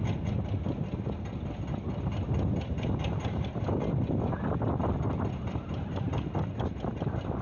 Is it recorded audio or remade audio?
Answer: recorded